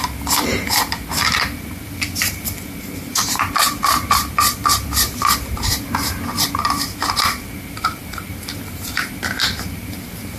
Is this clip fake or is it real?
fake